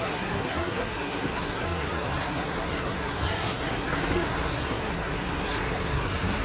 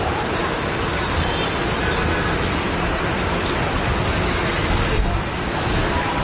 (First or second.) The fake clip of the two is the first